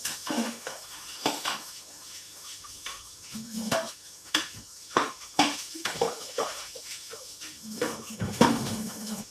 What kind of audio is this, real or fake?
fake